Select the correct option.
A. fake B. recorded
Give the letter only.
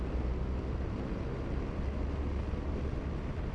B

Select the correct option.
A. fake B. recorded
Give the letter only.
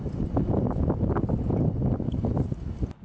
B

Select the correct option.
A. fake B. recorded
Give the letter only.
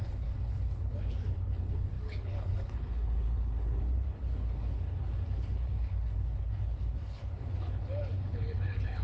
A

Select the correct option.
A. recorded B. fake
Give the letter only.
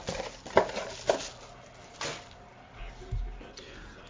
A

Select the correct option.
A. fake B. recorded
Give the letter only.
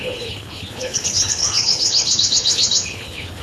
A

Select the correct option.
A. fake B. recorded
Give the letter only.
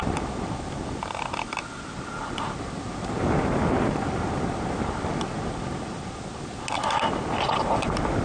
B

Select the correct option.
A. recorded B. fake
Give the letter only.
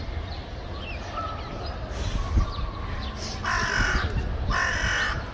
A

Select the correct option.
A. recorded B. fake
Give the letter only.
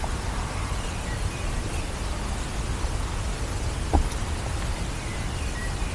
A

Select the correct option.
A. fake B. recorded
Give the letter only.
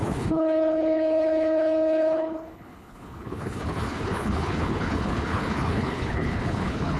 A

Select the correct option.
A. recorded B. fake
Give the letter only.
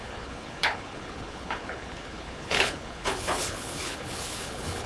B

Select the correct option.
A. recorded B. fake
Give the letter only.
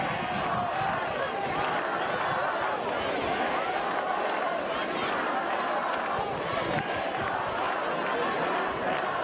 A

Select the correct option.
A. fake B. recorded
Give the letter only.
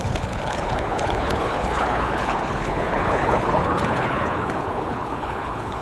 A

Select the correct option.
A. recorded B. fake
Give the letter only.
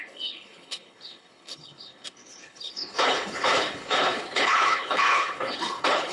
B